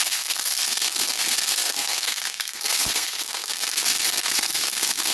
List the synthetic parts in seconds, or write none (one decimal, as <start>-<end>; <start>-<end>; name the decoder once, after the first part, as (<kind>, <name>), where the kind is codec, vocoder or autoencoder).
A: 0.0-5.1 (codec, SNAC)